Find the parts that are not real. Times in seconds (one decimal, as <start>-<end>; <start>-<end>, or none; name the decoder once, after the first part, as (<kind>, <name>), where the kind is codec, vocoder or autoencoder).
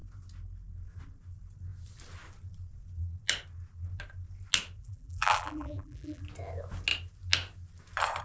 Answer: 4.8-6.2 (vocoder, BigVGAN v2)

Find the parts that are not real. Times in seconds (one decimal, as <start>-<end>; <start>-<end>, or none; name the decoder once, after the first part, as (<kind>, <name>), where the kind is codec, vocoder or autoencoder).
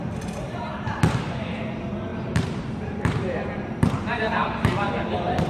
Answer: 2.1-4.9 (vocoder, BigVGAN v2)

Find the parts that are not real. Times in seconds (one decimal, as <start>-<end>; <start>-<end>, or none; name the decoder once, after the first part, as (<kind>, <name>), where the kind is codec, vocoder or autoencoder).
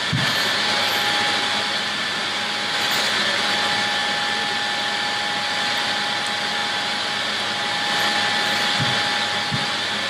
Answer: 0.0-0.9 (vocoder, BigVGAN v2)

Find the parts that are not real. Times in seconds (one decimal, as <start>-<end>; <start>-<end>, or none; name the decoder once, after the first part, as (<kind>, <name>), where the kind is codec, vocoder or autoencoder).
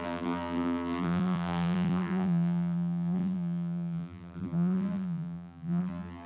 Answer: 0.0-6.3 (vocoder, BigVGAN v2)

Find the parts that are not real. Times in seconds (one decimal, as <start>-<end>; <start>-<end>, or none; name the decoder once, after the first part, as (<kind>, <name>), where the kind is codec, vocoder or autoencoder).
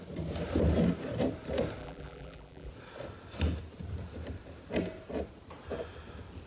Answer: 1.8-2.7 (vocoder, BigVGAN v2)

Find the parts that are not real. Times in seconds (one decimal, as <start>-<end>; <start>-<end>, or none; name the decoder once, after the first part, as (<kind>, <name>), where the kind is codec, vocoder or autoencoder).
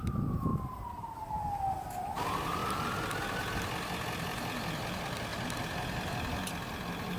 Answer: 0.5-1.6 (vocoder, BigVGAN v2)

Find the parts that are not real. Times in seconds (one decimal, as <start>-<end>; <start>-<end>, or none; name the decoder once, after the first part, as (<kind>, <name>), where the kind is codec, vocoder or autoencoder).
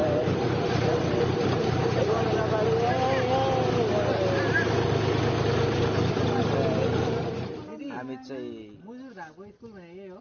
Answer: 0.0-2.4 (vocoder, BigVGAN v2); 7.2-7.8